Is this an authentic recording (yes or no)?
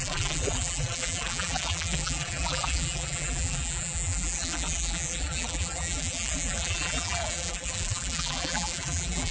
no